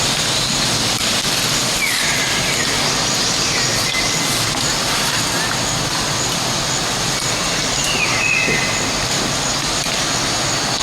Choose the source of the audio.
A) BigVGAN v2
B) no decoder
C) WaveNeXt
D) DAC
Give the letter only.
B